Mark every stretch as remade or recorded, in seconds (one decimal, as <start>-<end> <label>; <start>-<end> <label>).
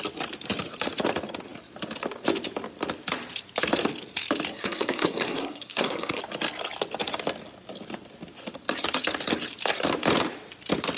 0.0-4.5 recorded; 4.5-6.2 remade; 6.2-11.0 recorded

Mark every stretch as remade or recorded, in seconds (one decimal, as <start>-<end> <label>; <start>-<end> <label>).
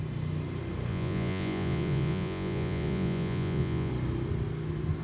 0.0-0.9 recorded; 0.9-3.9 remade; 3.9-5.0 recorded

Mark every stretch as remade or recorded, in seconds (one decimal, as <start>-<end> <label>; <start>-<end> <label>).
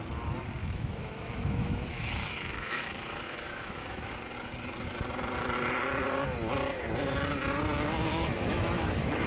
0.0-0.6 recorded; 0.6-4.1 remade; 4.1-8.1 recorded; 8.1-9.3 remade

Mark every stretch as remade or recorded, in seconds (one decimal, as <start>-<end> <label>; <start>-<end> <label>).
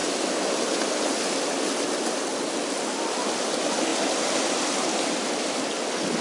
0.0-6.2 recorded